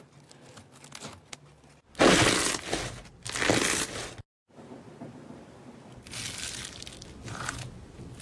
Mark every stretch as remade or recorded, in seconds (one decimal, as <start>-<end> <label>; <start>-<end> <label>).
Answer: 0.0-8.2 recorded